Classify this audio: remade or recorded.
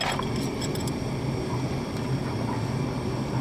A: recorded